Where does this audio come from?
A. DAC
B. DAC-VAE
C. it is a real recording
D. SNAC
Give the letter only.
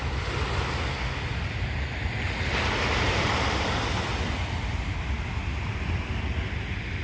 C